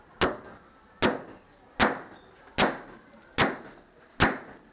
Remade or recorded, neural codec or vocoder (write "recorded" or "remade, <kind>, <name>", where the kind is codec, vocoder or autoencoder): recorded